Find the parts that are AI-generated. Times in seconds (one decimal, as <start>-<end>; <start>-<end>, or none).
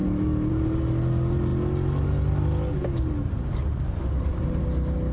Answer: 0.0-0.5